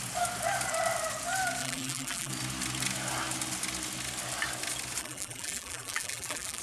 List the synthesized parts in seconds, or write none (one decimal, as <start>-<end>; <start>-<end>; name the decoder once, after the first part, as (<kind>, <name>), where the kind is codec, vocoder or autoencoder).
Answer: 1.6-2.3 (vocoder, BigVGAN v2); 5.0-6.6